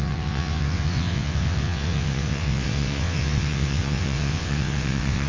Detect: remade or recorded remade